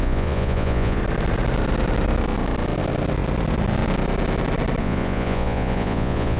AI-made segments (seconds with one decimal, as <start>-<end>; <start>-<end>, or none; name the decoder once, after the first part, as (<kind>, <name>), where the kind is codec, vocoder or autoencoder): 0.0-1.0 (vocoder, Vocos); 4.8-6.4